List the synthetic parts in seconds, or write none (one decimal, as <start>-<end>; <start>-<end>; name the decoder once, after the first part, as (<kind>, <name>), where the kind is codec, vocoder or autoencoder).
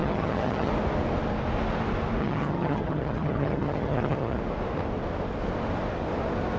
0.0-0.7 (vocoder, HiFi-GAN); 2.2-4.4